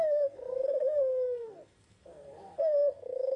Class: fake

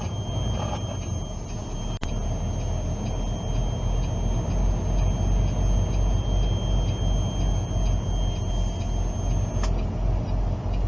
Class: real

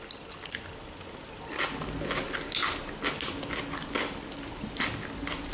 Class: real